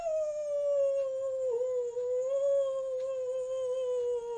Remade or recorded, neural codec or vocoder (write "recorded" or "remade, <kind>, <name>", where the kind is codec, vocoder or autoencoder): recorded